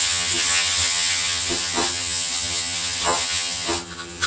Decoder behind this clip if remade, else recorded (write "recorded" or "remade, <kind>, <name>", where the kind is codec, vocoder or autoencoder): remade, vocoder, HiFi-GAN